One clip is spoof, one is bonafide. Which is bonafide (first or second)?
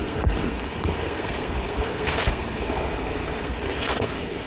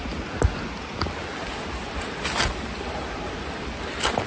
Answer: second